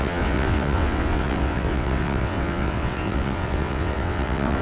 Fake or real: fake